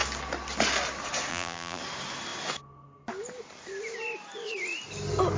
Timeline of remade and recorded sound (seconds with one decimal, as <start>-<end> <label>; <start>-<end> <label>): 0.0-1.3 recorded; 1.3-1.8 remade; 1.8-5.4 recorded